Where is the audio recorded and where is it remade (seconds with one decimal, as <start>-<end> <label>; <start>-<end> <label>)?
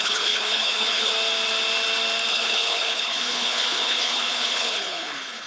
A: 0.0-1.1 remade; 1.1-2.3 recorded; 2.3-5.5 remade